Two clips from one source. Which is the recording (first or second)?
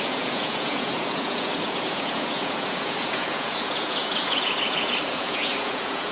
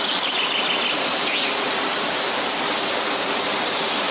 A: second